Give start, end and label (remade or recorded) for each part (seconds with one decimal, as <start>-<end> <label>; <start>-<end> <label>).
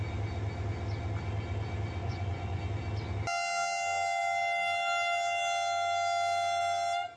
0.0-2.0 recorded; 2.0-2.6 remade; 2.6-7.2 recorded